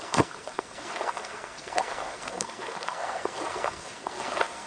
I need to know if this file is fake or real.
fake